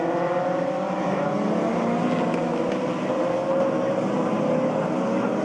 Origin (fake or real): real